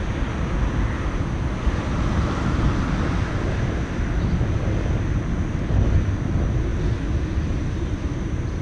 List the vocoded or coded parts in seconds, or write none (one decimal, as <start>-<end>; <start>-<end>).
none

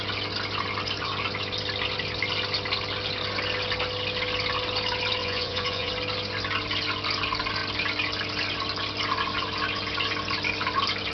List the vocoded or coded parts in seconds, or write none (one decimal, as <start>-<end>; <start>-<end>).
5.2-5.9

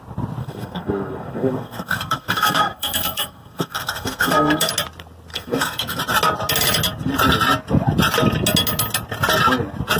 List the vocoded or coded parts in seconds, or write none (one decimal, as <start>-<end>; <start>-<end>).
0.4-4.7; 5.3-6.0